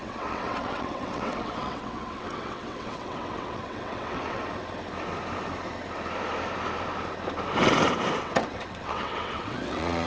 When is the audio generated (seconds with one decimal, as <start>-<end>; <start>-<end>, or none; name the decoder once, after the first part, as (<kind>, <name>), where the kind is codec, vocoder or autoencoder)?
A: 0.0-4.4 (vocoder, WaveNeXt); 8.2-10.1